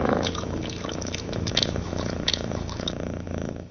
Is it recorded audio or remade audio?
remade